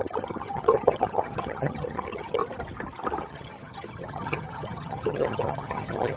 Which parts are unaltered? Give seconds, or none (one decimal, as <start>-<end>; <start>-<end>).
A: 2.4-3.2